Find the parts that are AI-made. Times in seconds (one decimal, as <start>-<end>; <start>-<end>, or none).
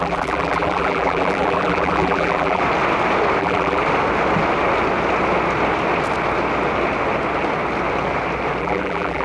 0.0-2.6; 3.4-3.8; 8.6-9.2